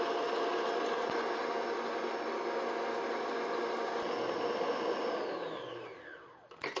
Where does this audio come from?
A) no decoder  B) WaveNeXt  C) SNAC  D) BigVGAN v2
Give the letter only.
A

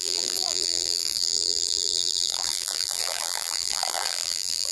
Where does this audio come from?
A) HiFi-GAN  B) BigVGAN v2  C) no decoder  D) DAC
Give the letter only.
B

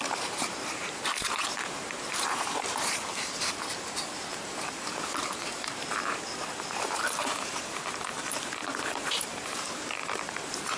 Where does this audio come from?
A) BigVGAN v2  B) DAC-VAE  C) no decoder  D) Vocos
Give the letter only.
A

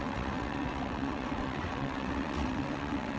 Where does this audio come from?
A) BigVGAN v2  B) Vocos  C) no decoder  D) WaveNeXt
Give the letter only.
D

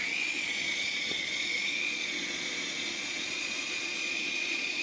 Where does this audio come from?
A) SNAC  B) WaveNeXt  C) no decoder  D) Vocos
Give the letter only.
D